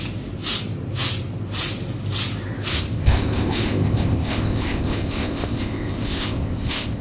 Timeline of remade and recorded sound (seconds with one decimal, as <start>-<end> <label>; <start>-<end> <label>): 0.0-2.7 recorded; 2.7-7.0 remade